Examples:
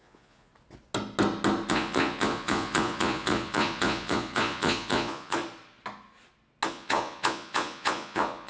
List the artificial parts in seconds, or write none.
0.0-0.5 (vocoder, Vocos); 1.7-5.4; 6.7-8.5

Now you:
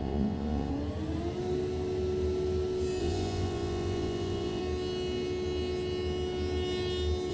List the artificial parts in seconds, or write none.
0.0-0.7 (vocoder, Vocos); 3.0-4.6

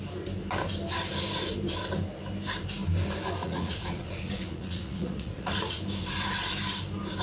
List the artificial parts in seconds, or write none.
3.4-5.8 (vocoder, Vocos)